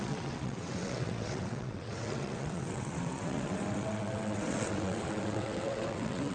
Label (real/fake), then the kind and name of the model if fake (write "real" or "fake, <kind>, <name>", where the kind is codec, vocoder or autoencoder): fake, vocoder, WaveNeXt